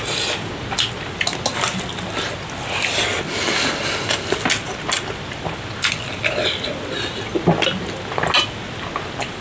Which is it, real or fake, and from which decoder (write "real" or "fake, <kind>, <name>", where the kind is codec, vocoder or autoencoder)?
real